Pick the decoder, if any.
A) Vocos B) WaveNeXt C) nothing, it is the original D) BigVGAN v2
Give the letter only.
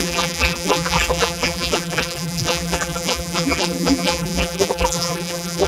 D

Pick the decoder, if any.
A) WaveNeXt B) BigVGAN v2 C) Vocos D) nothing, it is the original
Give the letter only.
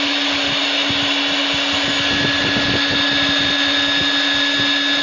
D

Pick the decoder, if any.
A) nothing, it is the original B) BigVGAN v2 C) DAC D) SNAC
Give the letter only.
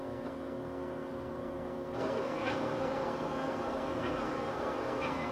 D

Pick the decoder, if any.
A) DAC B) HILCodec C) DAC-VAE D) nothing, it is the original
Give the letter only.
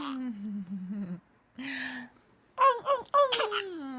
D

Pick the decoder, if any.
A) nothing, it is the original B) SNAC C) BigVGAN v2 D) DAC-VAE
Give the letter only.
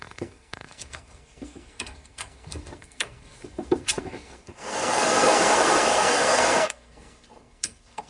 B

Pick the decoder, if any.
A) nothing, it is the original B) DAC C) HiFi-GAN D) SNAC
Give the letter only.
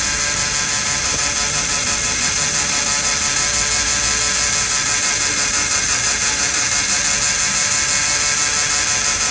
A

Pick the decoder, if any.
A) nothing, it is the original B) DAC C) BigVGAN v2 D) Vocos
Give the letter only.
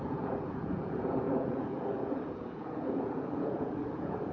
D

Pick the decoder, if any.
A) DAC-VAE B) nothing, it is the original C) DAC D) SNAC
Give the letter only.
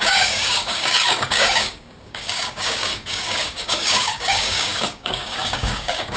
C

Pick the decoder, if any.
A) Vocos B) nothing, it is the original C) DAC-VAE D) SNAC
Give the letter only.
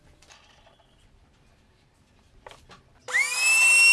B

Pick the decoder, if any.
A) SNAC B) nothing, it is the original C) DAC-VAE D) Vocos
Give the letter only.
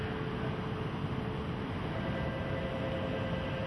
B